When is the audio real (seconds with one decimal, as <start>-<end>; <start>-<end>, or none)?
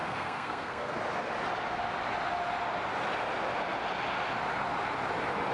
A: 1.0-5.5